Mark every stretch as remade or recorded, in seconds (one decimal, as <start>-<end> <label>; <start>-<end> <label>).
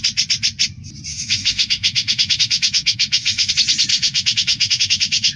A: 0.0-1.1 recorded; 1.1-3.5 remade; 3.5-3.9 recorded; 3.9-5.4 remade